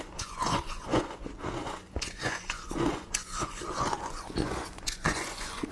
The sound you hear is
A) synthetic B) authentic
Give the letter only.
A